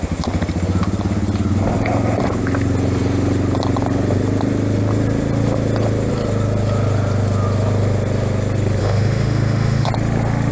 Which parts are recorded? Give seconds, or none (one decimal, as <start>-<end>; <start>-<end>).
0.0-8.8; 9.9-10.5